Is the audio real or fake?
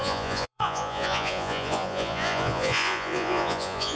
fake